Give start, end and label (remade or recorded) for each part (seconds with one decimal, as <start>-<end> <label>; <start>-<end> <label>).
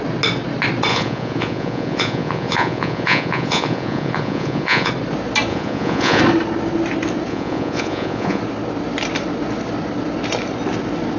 0.0-0.9 recorded; 0.9-4.9 remade; 4.9-5.5 recorded; 5.5-6.2 remade; 6.2-7.3 recorded; 7.3-8.4 remade; 8.4-11.2 recorded